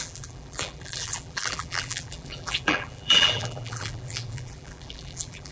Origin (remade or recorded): remade